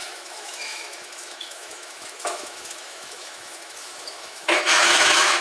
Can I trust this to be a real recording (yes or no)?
no